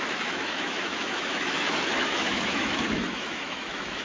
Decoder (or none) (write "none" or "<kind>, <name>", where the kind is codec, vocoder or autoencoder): autoencoder, DAC-VAE